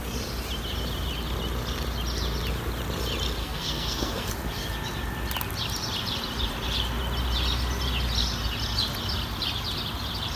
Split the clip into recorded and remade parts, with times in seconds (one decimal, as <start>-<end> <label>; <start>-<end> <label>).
0.0-3.4 recorded; 3.4-4.3 remade; 4.3-10.4 recorded